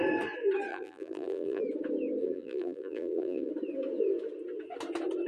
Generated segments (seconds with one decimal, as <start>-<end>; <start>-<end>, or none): 0.7-1.6; 2.2-3.5